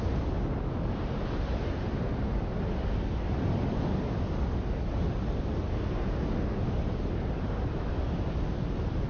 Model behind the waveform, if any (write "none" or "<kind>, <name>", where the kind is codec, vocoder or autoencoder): none